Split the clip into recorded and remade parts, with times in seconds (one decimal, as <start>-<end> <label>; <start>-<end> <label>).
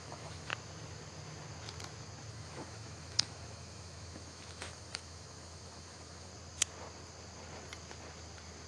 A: 0.0-0.5 remade; 0.5-2.3 recorded; 2.3-6.3 remade; 6.3-8.7 recorded